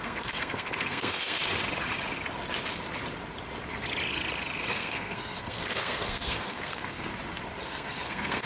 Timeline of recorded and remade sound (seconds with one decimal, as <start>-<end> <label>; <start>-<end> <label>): 0.0-1.4 remade; 1.4-4.7 recorded; 4.7-7.1 remade; 7.1-7.6 recorded; 7.6-8.5 remade